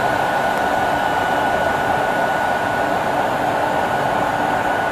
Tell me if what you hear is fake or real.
real